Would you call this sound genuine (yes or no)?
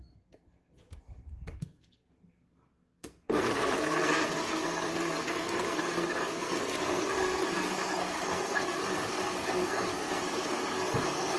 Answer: no